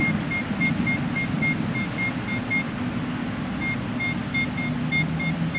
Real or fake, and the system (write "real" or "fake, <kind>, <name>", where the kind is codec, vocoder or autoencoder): real